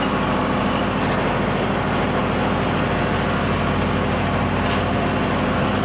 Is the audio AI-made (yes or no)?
no